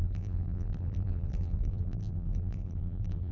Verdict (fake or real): fake